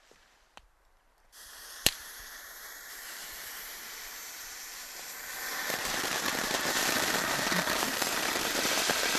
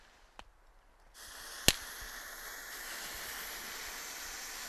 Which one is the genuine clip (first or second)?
second